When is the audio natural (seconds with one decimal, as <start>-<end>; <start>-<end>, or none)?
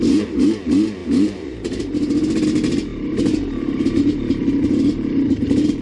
0.0-1.0; 2.0-2.9